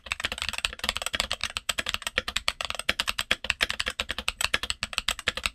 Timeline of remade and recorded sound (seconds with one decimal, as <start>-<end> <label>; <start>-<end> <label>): 0.0-1.4 recorded; 1.4-4.7 remade; 4.7-5.5 recorded